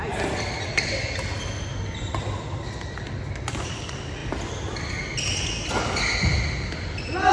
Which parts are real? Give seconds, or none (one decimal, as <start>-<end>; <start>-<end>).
0.0-7.3